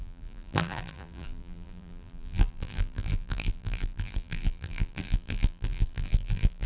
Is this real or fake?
fake